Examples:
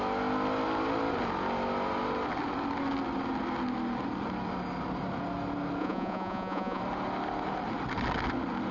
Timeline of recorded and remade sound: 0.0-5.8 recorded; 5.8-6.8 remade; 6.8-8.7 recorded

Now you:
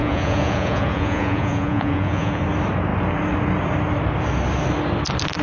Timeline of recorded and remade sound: 0.0-2.4 remade; 2.4-5.4 recorded

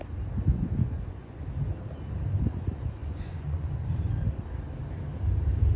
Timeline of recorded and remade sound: 0.0-0.8 recorded; 0.8-1.4 remade; 1.4-3.0 recorded; 3.0-4.1 remade; 4.1-5.8 recorded

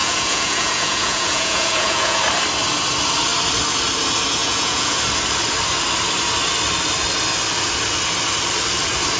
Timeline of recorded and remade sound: 0.0-2.2 remade; 2.2-4.4 recorded; 4.4-5.0 remade; 5.0-9.2 recorded

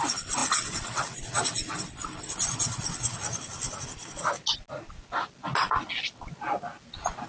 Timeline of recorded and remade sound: 0.0-7.3 recorded

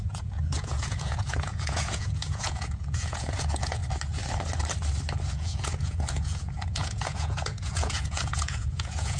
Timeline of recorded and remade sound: 0.0-3.8 remade; 3.8-5.3 recorded; 5.3-9.2 remade

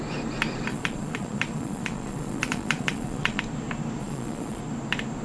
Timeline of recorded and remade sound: 0.0-0.7 recorded; 0.7-3.4 remade; 3.4-4.0 recorded; 4.0-4.6 remade; 4.6-5.2 recorded

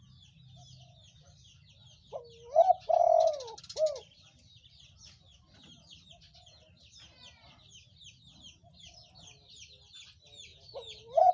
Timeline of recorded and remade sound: 0.0-10.5 recorded; 10.5-11.3 remade